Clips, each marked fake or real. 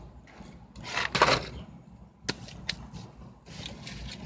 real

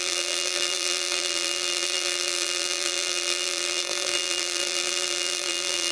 fake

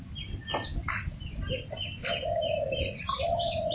real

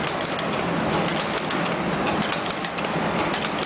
real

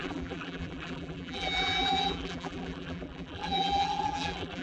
fake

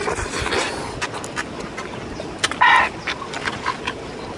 real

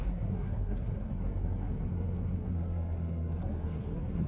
fake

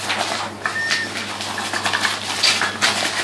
real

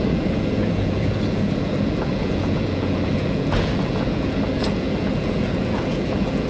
fake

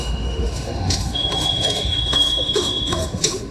fake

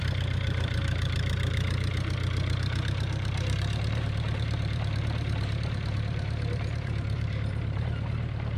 fake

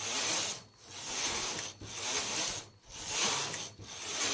real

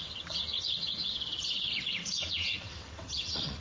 fake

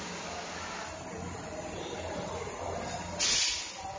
real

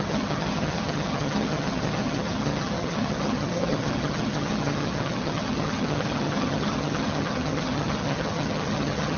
fake